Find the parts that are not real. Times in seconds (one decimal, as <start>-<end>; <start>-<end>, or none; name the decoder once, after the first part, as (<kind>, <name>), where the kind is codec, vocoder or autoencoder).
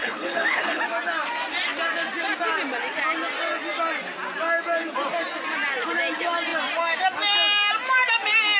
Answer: 0.0-0.8 (codec, HILCodec)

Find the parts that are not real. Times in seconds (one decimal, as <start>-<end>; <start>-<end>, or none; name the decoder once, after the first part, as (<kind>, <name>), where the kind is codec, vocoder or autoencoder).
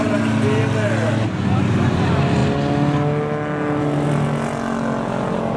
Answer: none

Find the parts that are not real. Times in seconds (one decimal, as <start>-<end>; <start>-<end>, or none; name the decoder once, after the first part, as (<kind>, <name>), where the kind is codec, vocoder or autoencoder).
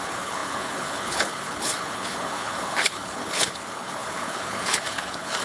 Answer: 0.0-5.4 (codec, HILCodec)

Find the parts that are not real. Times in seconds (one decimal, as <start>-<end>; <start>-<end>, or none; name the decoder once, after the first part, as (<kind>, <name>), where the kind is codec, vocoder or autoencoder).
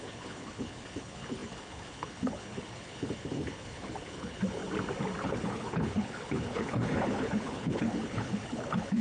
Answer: 0.0-4.6 (codec, HILCodec); 5.2-9.0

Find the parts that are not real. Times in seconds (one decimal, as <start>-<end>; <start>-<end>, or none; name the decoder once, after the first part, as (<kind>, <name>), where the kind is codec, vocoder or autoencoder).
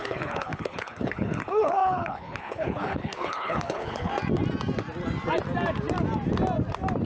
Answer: 0.0-4.1 (codec, HILCodec)